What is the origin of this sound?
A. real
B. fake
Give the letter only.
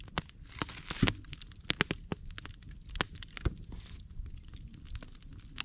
A